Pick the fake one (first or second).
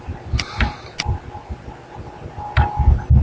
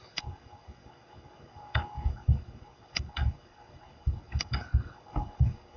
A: second